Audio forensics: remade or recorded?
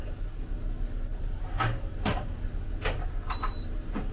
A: recorded